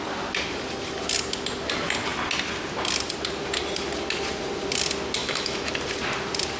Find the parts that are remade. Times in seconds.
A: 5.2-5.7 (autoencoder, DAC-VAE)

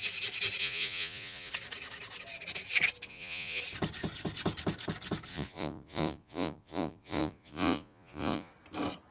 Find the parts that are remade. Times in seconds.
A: 0.6-1.5 (vocoder, Vocos); 3.1-3.6; 5.3-8.5